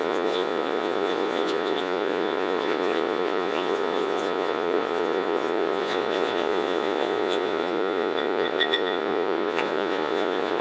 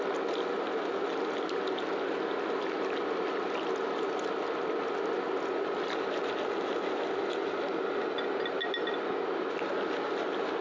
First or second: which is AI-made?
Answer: first